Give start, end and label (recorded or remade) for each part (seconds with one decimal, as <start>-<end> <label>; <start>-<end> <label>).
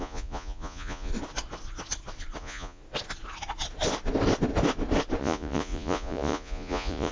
0.0-1.1 remade; 1.1-2.4 recorded; 2.4-2.8 remade; 2.8-5.2 recorded; 5.2-7.1 remade